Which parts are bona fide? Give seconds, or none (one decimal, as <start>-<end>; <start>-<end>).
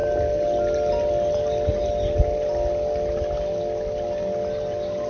0.0-5.1